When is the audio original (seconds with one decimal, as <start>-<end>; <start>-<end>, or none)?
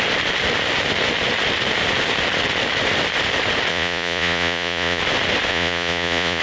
0.0-3.7; 5.0-5.5